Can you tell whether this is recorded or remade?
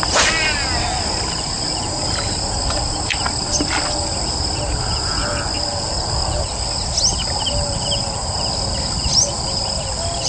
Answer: recorded